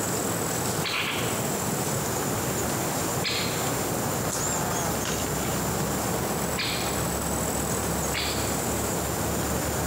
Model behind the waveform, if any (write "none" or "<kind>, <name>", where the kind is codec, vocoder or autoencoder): none